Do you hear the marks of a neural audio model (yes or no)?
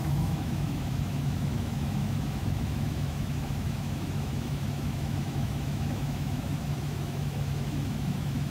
yes